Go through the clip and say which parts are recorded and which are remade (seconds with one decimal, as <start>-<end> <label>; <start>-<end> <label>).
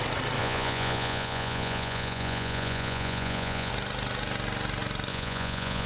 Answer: 0.0-0.4 recorded; 0.4-3.7 remade; 3.7-5.1 recorded; 5.1-5.9 remade